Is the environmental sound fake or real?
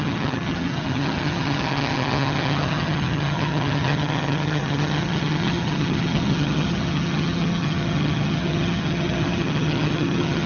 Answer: fake